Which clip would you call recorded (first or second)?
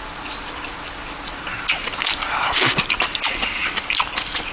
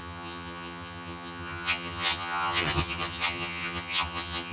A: first